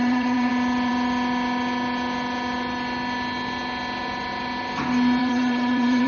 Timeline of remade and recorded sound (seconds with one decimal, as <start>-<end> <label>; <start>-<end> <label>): 0.0-0.5 remade; 0.5-5.2 recorded; 5.2-6.1 remade